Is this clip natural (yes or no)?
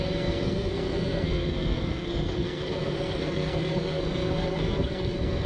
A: no